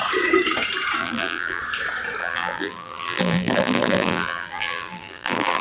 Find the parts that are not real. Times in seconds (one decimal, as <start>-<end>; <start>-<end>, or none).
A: 1.0-1.6; 2.2-5.6